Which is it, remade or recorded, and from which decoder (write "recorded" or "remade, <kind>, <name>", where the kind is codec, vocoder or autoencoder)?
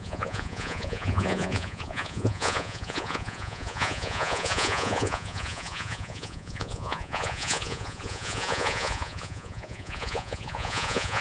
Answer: remade, vocoder, Vocos